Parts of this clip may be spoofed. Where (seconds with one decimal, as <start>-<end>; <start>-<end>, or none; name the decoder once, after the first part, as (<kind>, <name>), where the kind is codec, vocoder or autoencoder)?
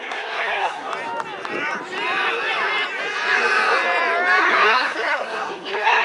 0.0-0.9 (codec, SNAC); 4.4-6.0